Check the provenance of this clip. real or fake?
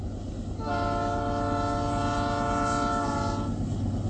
real